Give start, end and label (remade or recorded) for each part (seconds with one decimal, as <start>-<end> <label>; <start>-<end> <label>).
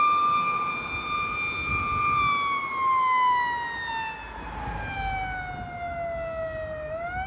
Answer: 0.0-7.3 recorded